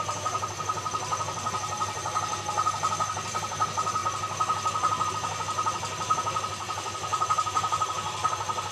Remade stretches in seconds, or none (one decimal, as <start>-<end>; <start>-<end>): none